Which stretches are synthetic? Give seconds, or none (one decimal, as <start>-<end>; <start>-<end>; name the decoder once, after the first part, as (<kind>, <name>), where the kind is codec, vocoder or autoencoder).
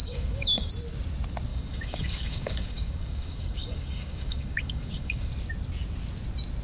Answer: 0.0-0.7 (codec, DAC); 1.5-5.3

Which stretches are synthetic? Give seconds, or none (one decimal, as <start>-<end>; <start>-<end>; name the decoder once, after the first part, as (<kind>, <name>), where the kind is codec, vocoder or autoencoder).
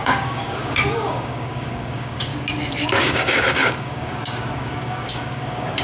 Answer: 0.0-2.3 (codec, DAC); 3.0-5.8